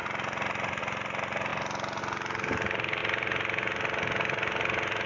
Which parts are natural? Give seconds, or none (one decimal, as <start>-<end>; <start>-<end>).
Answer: 0.0-5.1